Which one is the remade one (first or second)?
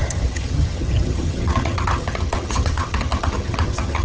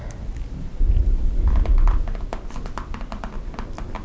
first